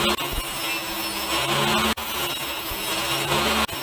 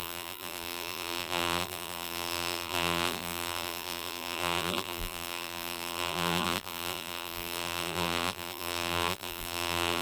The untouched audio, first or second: first